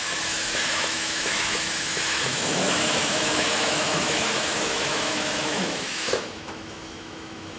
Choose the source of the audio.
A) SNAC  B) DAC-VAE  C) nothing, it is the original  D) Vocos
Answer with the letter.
B